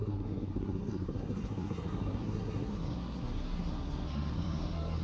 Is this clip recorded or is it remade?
remade